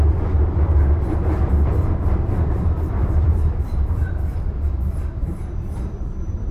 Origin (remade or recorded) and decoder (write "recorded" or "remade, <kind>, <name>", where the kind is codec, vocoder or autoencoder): remade, vocoder, BigVGAN v2